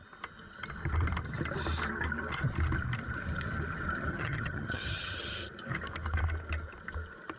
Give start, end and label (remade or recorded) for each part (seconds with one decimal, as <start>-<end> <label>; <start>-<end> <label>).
0.0-4.1 recorded; 4.1-5.5 remade; 5.5-7.4 recorded